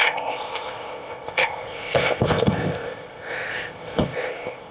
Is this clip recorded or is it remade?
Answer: remade